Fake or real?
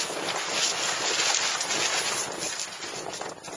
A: real